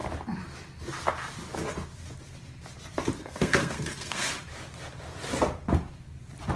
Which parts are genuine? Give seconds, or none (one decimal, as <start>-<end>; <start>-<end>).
0.0-3.2; 4.3-6.6